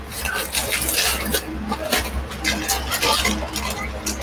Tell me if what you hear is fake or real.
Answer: real